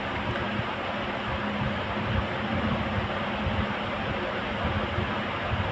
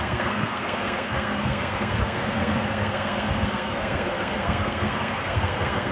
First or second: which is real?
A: first